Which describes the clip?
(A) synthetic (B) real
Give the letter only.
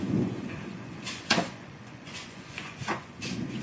A